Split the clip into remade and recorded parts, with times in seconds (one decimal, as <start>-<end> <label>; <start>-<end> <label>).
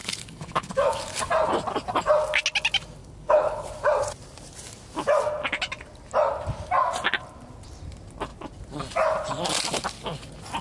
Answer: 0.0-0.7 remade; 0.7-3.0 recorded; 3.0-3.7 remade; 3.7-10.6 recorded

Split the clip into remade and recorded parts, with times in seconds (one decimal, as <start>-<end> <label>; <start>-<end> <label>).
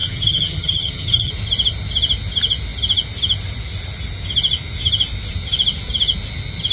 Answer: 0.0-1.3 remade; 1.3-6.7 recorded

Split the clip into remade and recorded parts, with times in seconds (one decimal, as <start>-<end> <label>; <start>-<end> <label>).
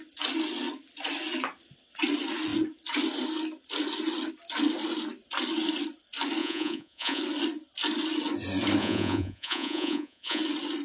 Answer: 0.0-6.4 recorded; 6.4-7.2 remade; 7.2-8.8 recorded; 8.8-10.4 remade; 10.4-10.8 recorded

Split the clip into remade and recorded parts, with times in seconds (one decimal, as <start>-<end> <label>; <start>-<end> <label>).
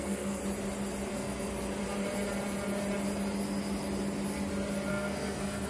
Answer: 0.0-0.4 remade; 0.4-1.1 recorded; 1.1-1.5 remade; 1.5-4.9 recorded; 4.9-5.7 remade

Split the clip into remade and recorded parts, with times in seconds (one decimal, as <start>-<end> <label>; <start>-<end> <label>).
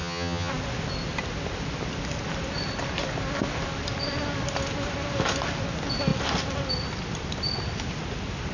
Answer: 0.0-0.5 remade; 0.5-8.5 recorded